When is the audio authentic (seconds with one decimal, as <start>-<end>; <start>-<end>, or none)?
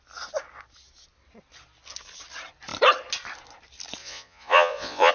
0.0-4.0